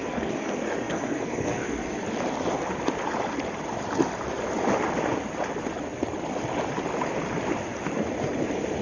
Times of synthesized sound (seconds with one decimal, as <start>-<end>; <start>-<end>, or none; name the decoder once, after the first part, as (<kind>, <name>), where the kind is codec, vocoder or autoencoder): 0.0-2.0 (codec, SNAC)